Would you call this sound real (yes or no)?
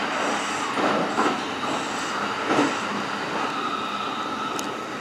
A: yes